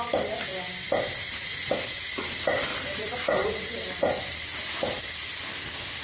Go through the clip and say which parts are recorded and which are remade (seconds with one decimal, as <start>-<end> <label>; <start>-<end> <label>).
0.0-2.7 recorded; 2.7-3.8 remade; 3.8-6.0 recorded